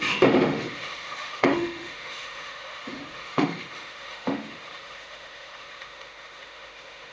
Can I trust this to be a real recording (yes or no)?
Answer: no